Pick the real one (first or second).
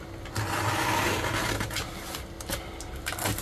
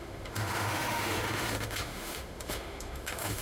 first